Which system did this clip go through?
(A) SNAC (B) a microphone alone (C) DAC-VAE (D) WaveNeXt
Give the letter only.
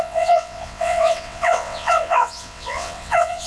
D